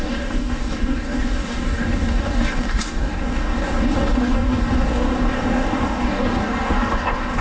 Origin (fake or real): fake